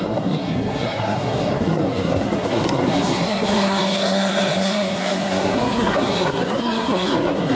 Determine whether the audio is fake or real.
fake